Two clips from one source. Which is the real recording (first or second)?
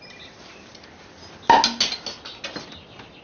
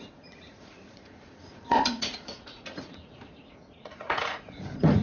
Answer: first